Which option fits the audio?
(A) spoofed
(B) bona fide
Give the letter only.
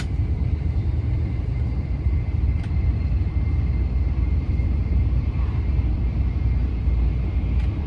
A